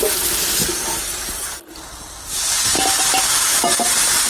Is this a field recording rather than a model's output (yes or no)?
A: yes